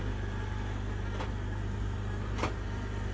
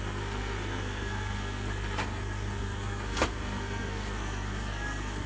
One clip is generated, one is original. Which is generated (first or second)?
second